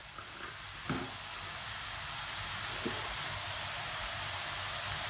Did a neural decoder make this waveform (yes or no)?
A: no